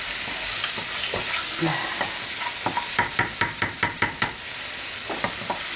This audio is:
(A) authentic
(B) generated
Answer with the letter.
A